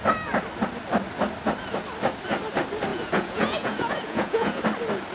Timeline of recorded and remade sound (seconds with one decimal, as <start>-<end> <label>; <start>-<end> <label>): 0.0-2.9 recorded; 2.9-4.6 remade; 4.6-5.1 recorded